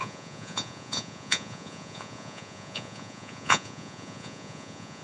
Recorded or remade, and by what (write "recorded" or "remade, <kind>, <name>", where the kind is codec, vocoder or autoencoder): remade, vocoder, Vocos